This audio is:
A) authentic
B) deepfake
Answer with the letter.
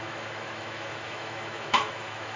B